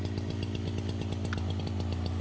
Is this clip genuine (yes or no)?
yes